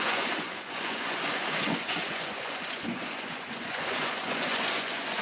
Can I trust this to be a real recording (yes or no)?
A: no